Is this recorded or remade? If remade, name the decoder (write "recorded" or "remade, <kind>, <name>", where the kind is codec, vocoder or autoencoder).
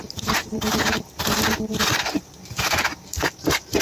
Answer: remade, vocoder, BigVGAN v2